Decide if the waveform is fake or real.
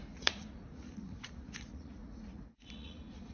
fake